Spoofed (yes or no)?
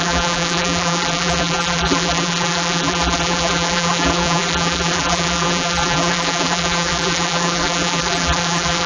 yes